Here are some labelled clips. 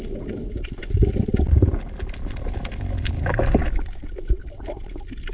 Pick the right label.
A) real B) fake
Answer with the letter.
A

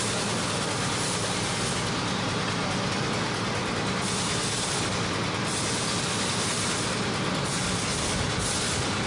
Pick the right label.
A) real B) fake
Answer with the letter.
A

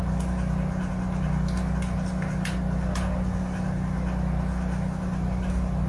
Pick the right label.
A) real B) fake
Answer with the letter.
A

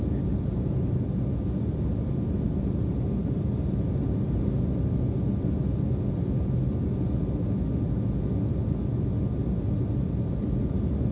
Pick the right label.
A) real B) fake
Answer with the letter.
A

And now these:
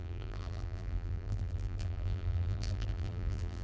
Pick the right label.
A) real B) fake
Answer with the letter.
B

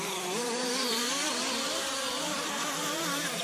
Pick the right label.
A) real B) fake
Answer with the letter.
B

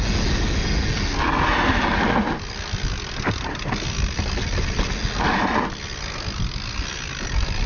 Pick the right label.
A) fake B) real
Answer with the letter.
B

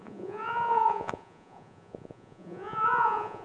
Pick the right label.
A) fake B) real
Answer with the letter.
A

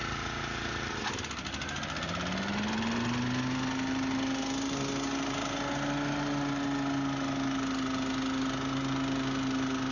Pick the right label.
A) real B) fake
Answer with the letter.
A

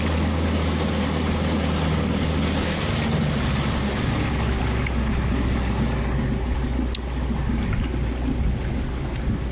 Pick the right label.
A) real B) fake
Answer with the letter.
A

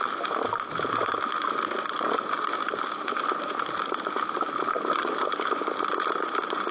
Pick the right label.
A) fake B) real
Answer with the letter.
A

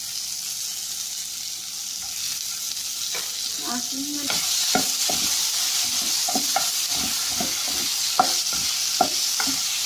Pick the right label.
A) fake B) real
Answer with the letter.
B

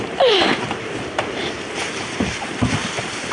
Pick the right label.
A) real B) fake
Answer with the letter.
B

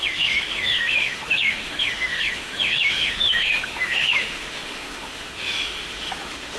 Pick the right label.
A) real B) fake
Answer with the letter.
B